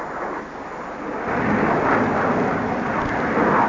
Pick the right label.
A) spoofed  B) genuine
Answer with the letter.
B